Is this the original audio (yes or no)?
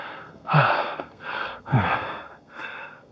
no